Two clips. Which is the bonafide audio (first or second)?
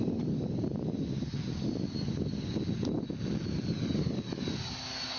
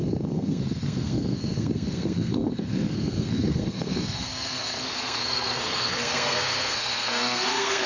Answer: first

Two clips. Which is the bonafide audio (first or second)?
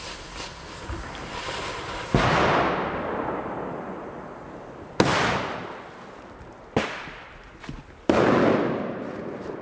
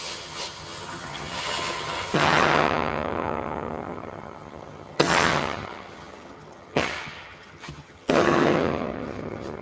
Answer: first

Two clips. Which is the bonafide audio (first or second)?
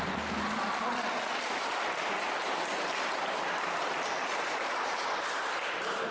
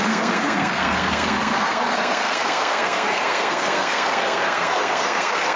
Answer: first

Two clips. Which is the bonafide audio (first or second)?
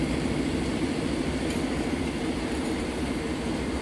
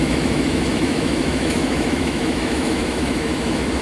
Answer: first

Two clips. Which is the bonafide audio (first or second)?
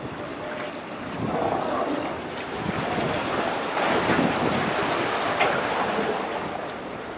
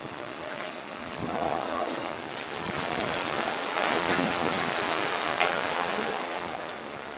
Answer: first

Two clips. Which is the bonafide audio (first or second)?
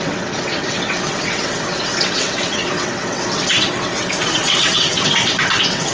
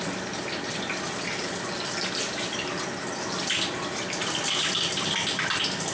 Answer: second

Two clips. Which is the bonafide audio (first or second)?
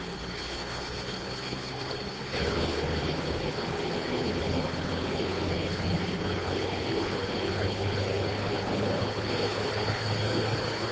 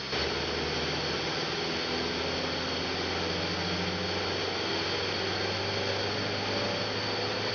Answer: second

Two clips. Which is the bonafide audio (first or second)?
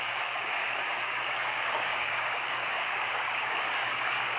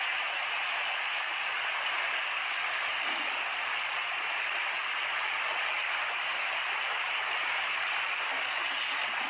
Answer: second